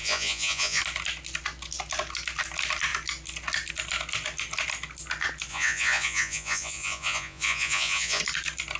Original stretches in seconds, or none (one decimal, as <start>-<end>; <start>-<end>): 0.8-5.5; 8.2-8.8